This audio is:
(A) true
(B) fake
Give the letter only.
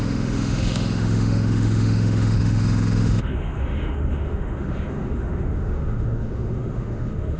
B